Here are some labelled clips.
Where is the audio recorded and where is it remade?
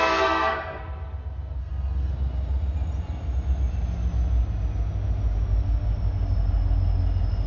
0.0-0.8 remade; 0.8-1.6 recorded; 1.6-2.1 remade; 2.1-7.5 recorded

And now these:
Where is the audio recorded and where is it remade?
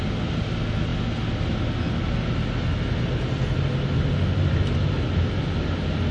0.0-6.1 recorded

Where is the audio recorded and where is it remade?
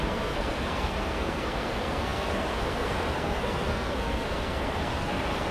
0.0-5.5 remade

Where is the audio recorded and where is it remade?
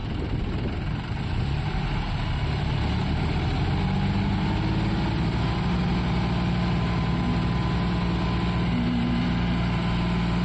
0.0-10.4 recorded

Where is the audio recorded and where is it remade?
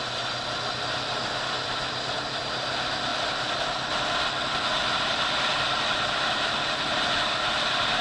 0.0-8.0 recorded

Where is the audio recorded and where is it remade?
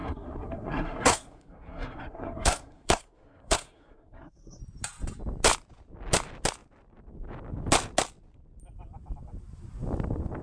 0.0-4.6 remade; 4.6-10.4 recorded